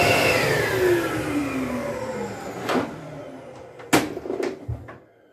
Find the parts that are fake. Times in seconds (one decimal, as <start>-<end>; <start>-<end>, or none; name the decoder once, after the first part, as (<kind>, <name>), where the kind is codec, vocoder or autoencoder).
1.4-3.2 (vocoder, BigVGAN v2)